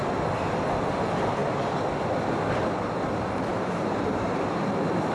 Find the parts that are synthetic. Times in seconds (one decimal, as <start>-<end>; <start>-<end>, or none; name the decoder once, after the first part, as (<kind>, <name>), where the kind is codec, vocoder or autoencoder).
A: 3.5-4.4 (vocoder, BigVGAN v2)